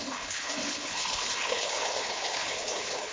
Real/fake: fake